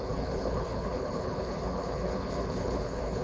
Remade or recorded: remade